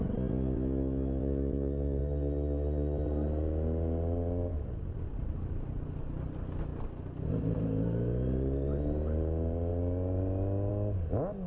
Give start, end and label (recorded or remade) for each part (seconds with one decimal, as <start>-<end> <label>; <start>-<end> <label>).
0.0-11.5 recorded